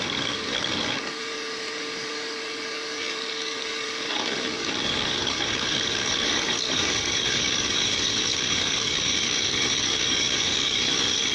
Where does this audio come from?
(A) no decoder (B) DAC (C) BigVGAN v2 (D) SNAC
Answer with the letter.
B